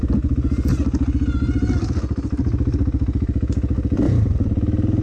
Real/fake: real